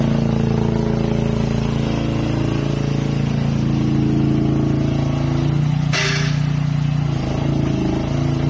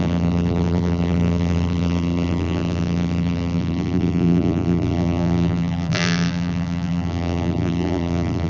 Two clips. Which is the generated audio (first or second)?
second